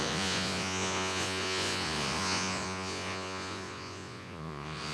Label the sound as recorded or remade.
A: remade